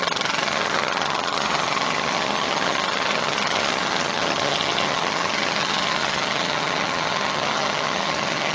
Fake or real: fake